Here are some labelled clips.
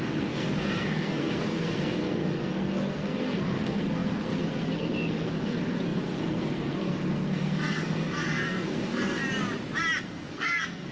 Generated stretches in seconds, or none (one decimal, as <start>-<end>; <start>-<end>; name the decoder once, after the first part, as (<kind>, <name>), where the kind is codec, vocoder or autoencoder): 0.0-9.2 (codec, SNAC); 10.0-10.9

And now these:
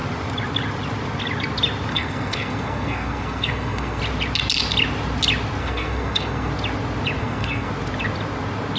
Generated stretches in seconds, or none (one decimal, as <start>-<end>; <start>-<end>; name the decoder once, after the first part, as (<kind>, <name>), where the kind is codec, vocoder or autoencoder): 1.9-4.0 (codec, SNAC); 5.6-6.5; 7.2-7.7

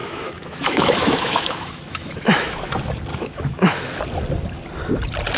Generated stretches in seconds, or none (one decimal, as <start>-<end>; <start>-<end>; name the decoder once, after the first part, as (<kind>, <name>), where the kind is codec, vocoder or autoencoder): 0.0-2.6 (autoencoder, DAC-VAE); 3.1-4.0

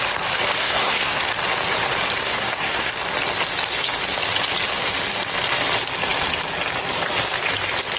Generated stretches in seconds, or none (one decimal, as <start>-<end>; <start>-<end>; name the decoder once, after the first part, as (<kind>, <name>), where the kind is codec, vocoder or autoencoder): 0.6-1.2 (codec, SNAC); 2.2-2.9